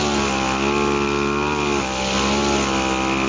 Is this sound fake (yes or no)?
no